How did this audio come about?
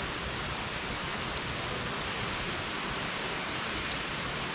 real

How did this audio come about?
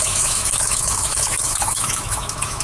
fake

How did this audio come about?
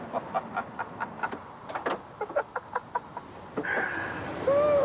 real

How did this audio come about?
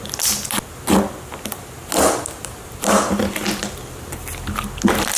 real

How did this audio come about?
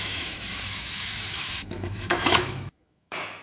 fake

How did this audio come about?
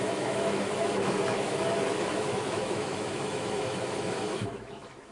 fake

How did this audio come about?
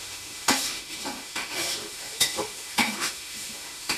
fake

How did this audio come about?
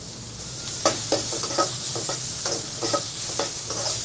real